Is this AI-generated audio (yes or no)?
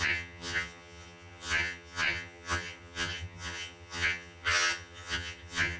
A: yes